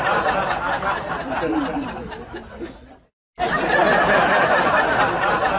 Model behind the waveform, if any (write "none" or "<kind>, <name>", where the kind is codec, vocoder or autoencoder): none